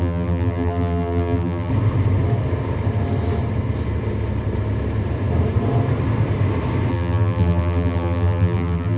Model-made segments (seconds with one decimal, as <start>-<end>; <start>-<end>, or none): 0.0-1.7; 6.9-9.0

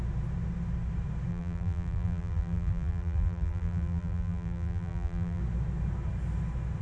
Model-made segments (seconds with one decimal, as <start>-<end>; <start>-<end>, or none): 1.3-5.4

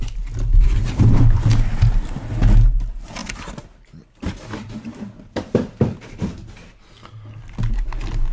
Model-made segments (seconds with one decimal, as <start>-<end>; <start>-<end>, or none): 0.5-1.2; 4.6-5.7

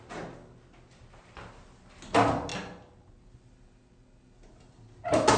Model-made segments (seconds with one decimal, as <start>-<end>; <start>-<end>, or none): none

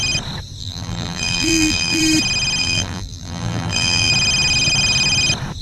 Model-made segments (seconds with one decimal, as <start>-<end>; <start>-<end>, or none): 0.6-2.0; 2.6-4.1

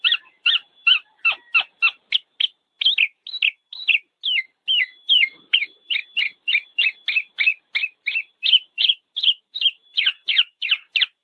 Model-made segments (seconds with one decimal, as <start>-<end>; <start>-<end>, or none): 0.0-1.1; 5.0-7.5; 8.0-11.2

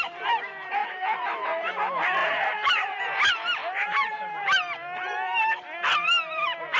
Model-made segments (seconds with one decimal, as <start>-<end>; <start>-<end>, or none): 0.8-1.7; 2.2-3.0; 3.6-4.3